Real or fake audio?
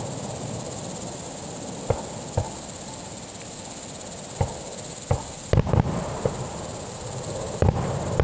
real